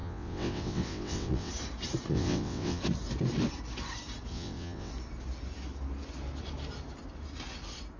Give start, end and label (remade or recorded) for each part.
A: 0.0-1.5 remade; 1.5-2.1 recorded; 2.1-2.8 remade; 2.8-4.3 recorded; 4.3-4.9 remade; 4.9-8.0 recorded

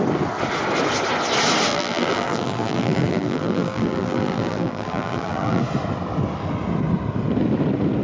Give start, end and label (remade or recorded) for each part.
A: 0.0-1.7 recorded; 1.7-5.6 remade; 5.6-8.0 recorded

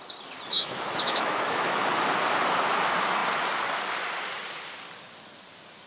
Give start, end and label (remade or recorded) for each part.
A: 0.0-0.5 recorded; 0.5-1.9 remade; 1.9-5.9 recorded

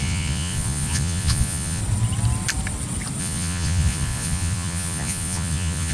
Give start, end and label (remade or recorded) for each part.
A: 0.0-1.8 remade; 1.8-3.2 recorded; 3.2-5.9 remade

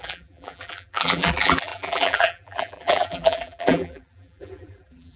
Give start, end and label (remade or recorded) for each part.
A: 0.0-5.2 remade

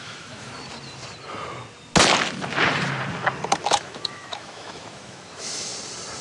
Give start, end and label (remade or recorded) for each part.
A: 0.0-0.5 remade; 0.5-3.6 recorded; 3.6-5.7 remade; 5.7-6.2 recorded

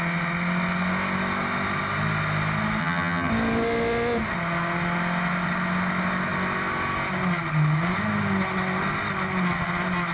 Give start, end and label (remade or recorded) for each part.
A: 0.0-2.8 recorded; 2.8-3.3 remade; 3.3-10.1 recorded